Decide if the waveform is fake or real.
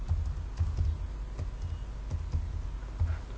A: real